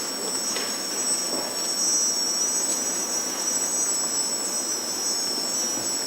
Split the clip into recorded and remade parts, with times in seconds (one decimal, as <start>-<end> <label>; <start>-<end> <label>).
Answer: 0.0-2.7 recorded; 2.7-3.7 remade; 3.7-6.1 recorded